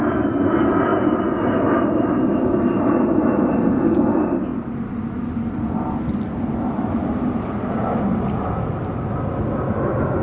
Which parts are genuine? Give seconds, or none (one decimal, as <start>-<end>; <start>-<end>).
0.0-10.2